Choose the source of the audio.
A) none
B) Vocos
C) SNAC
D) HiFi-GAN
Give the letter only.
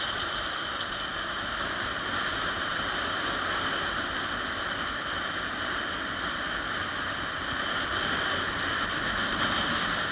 A